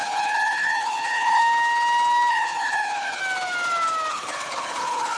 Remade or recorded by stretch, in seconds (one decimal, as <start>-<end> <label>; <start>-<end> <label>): 0.0-1.4 remade; 1.4-2.3 recorded; 2.3-3.2 remade; 3.2-4.1 recorded; 4.1-5.2 remade